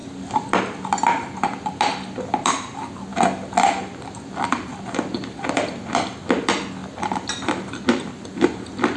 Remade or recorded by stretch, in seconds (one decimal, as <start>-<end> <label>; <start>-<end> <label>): 0.0-6.8 recorded; 6.8-8.5 remade; 8.5-9.0 recorded